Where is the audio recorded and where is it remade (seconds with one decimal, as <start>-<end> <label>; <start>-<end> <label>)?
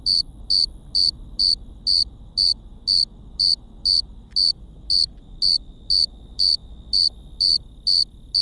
0.0-8.4 recorded